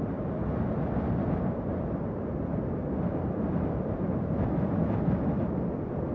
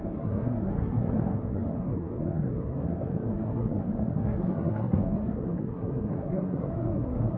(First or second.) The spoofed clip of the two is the second